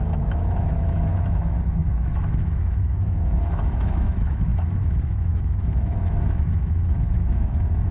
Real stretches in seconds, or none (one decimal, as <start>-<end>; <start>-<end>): none